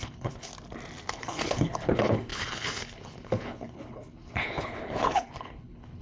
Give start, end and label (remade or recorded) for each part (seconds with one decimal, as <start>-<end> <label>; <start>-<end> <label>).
0.0-0.5 remade; 0.5-1.1 recorded; 1.1-6.0 remade

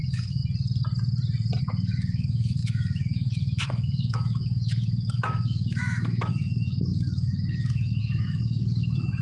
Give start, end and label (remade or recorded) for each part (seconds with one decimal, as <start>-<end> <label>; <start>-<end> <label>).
0.0-0.4 remade; 0.4-1.6 recorded; 1.6-9.2 remade